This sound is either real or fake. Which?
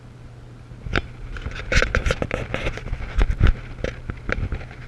real